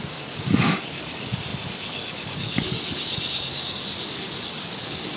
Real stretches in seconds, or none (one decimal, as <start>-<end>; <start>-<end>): none